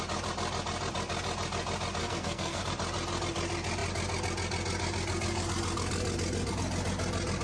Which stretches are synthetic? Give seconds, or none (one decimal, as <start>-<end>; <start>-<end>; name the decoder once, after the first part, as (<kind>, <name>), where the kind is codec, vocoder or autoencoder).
2.0-2.6 (codec, SNAC)